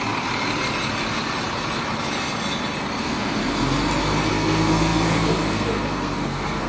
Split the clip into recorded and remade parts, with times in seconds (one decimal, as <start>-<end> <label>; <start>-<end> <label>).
0.0-3.0 recorded; 3.0-3.4 remade; 3.4-4.3 recorded; 4.3-6.7 remade